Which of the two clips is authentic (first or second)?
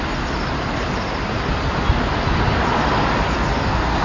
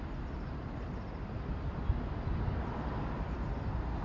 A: first